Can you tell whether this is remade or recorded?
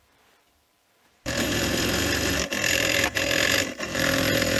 remade